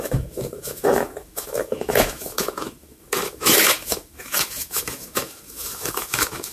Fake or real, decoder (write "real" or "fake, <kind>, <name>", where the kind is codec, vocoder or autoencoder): fake, autoencoder, DAC-VAE